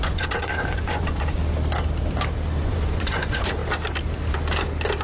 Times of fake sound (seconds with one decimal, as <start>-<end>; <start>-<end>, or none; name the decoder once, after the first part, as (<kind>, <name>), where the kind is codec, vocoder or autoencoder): 0.0-1.4 (vocoder, Vocos); 2.6-3.6